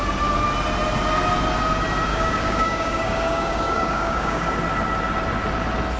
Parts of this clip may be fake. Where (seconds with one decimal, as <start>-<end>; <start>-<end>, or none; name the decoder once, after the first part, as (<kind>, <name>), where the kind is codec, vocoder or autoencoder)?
2.1-4.5 (codec, DAC)